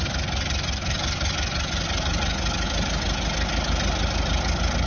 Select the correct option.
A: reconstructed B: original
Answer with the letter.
B